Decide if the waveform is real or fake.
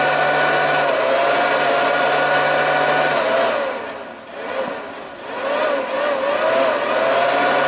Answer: real